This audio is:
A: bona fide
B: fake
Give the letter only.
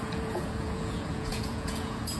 B